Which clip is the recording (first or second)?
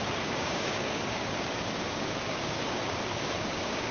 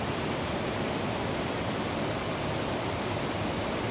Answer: second